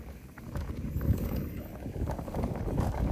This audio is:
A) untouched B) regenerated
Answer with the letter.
B